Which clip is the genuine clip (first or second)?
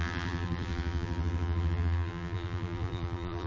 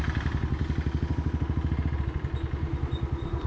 second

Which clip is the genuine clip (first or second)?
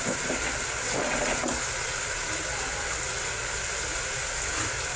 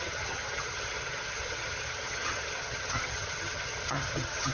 first